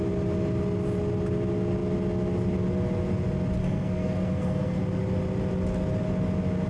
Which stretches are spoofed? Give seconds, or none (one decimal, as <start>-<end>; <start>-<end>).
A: 3.6-4.8